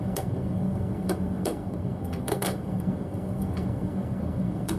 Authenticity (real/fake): fake